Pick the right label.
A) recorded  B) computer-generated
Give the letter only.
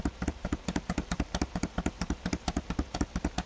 B